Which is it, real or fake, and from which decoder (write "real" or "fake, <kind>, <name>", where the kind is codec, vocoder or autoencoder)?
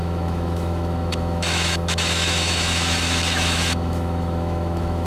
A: fake, autoencoder, DAC-VAE